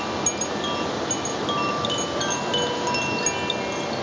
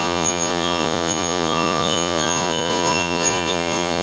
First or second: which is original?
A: first